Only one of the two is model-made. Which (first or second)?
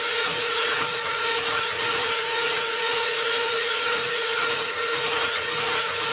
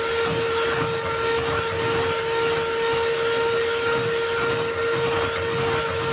first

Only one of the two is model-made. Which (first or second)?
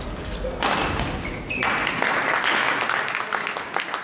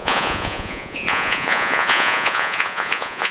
second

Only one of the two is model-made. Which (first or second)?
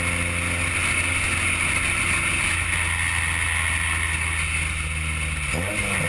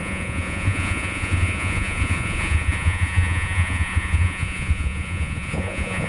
second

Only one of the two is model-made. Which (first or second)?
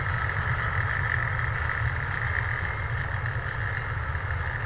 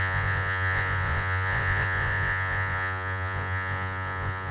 second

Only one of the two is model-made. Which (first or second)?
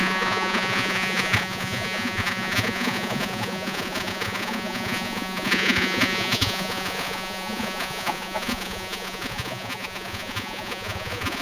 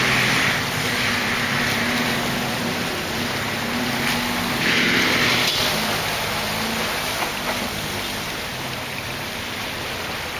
first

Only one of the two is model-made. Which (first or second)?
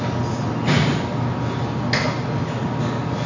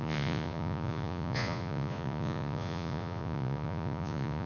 second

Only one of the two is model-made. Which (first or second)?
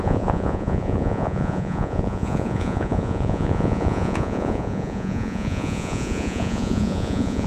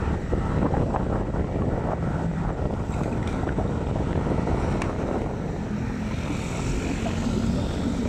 first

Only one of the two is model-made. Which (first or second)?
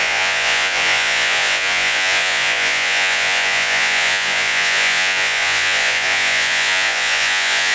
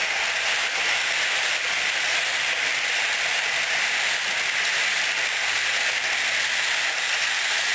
first